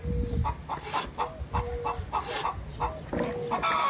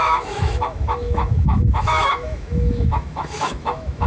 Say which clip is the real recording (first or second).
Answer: first